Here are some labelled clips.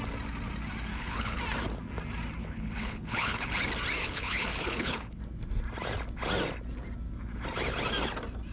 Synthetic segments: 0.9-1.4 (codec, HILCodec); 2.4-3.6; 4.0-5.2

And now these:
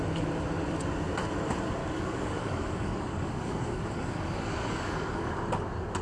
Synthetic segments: 1.8-5.4 (codec, DAC)

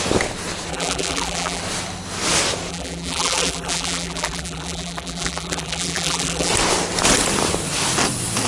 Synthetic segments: 0.7-1.6 (vocoder, BigVGAN v2); 2.7-6.5

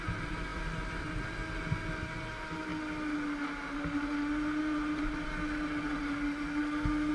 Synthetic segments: none

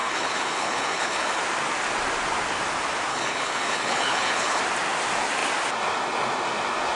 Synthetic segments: 0.0-1.4 (codec, HILCodec); 3.1-4.6